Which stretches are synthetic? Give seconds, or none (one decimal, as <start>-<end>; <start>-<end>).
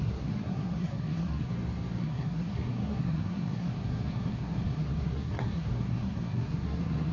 0.0-1.5; 2.0-7.1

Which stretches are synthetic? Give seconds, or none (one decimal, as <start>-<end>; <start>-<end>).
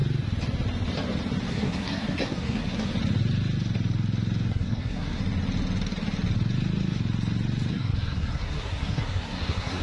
1.5-2.9; 4.5-5.2; 7.7-9.8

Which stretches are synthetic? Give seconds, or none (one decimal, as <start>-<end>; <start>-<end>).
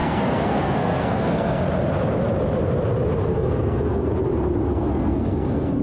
0.0-1.6; 3.3-4.1; 4.7-5.8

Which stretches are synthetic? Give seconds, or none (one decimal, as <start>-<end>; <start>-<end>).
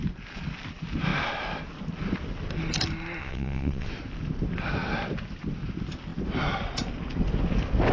3.2-3.9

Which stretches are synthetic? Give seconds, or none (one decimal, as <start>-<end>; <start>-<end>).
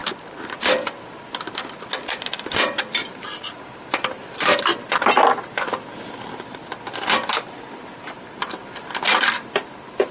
3.0-4.6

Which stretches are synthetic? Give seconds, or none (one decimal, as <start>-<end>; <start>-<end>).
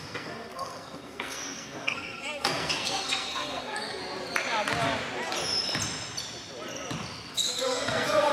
0.0-4.0; 7.3-8.3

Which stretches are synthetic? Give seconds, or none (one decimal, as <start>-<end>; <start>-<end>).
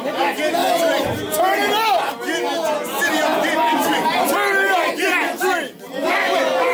6.0-6.7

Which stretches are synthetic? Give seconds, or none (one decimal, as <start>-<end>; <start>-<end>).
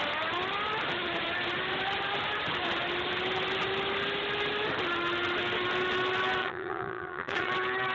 6.4-7.5